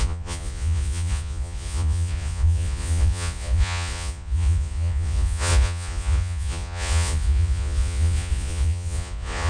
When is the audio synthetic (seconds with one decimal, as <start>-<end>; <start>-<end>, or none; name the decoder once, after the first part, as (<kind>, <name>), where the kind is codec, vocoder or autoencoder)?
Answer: 0.0-9.5 (vocoder, Vocos)